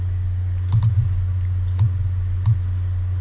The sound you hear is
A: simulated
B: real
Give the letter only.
B